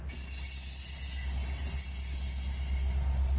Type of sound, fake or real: real